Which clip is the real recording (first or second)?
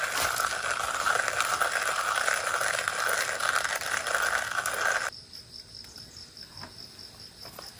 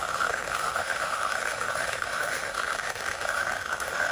first